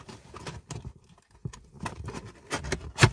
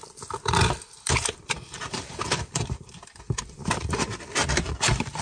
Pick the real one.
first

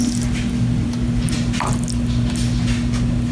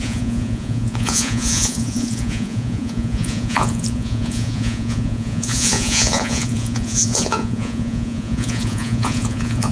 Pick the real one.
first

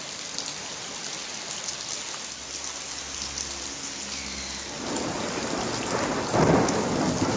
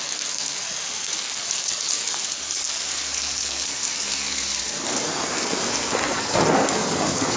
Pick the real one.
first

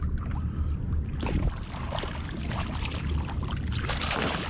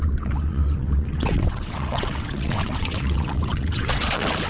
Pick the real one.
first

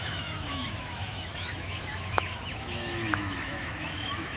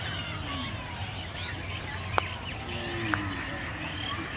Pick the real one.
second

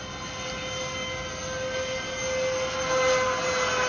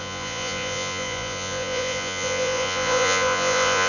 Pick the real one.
first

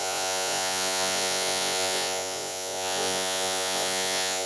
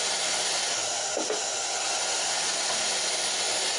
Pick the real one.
second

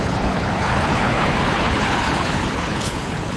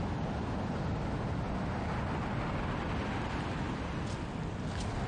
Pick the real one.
second